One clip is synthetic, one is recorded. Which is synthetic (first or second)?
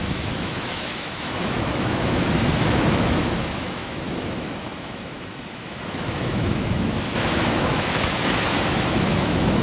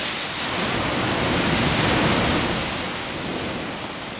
first